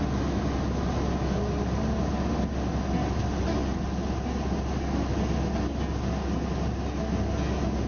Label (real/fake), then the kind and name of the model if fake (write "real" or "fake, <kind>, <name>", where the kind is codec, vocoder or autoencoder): real